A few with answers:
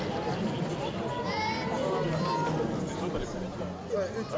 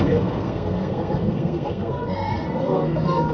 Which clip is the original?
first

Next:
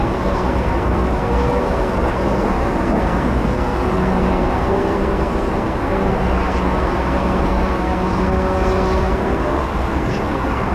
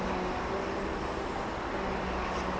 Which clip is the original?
second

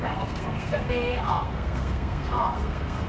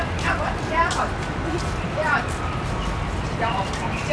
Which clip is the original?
second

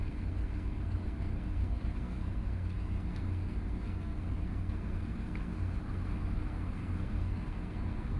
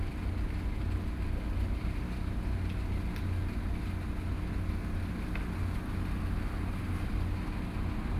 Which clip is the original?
second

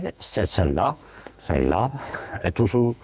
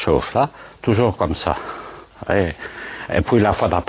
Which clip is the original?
second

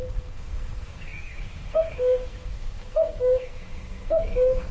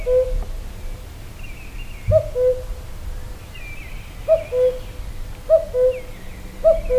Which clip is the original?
second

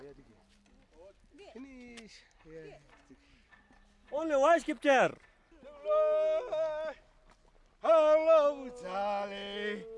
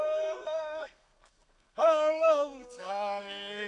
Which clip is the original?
first